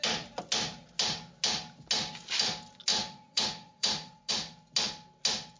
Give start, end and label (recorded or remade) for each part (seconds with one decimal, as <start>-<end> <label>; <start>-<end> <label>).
0.0-2.9 recorded; 2.9-4.3 remade; 4.3-5.6 recorded